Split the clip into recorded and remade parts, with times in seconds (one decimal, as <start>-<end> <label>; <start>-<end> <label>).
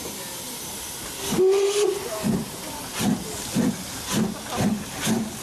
0.0-5.4 recorded